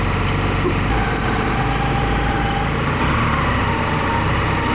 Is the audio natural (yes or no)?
yes